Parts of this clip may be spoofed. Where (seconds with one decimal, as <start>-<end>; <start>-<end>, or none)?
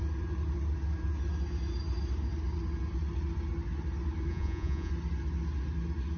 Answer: 4.3-4.9